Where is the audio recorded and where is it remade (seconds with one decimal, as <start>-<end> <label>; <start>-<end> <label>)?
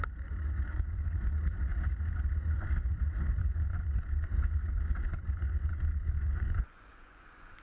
0.0-7.6 remade